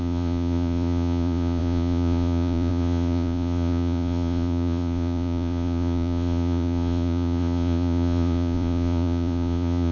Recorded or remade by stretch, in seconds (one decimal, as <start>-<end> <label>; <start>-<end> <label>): 0.0-9.9 remade